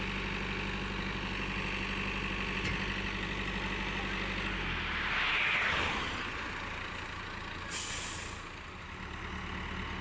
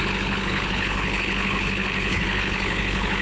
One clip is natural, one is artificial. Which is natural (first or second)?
first